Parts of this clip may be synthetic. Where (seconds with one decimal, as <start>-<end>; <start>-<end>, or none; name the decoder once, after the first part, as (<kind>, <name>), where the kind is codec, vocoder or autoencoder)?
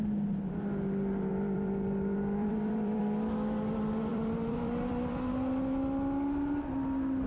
1.3-3.0 (vocoder, BigVGAN v2); 4.1-5.3